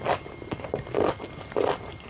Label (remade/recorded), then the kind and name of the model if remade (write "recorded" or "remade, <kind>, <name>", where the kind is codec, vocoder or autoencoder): recorded